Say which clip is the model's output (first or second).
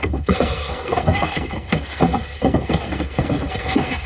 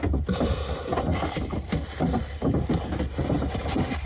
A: first